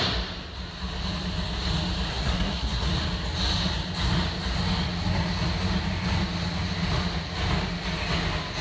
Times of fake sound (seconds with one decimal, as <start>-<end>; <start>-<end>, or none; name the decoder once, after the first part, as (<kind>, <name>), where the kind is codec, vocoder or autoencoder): 2.1-2.9 (codec, SNAC)